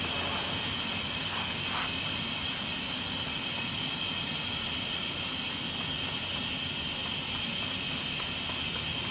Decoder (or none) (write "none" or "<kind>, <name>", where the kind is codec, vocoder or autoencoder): none